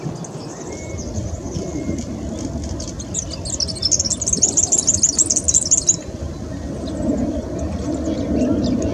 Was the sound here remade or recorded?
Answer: recorded